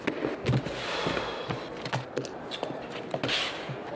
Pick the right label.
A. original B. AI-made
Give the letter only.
A